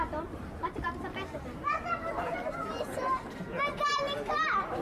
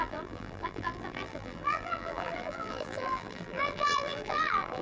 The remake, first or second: second